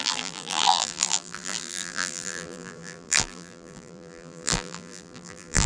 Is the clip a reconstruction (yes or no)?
yes